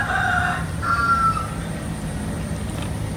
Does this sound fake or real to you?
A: real